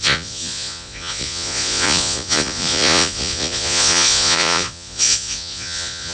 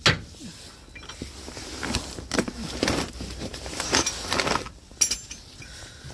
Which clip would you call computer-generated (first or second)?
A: first